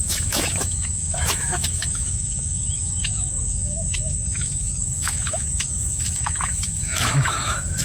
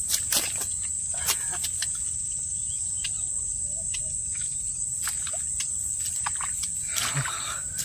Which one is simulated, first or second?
first